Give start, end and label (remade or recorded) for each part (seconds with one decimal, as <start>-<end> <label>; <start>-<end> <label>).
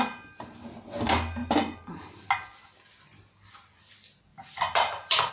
0.0-1.4 recorded; 1.4-2.2 remade; 2.2-4.3 recorded; 4.3-5.3 remade